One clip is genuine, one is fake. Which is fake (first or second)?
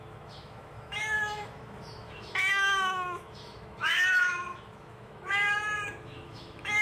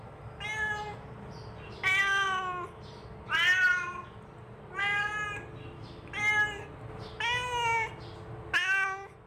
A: first